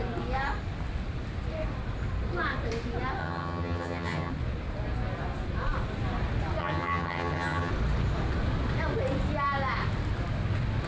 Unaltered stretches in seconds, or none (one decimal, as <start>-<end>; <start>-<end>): 0.0-3.2; 4.3-6.6; 7.7-10.9